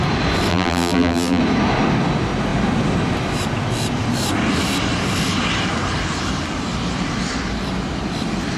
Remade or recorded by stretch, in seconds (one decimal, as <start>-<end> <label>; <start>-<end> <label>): 0.0-0.5 recorded; 0.5-1.4 remade; 1.4-8.6 recorded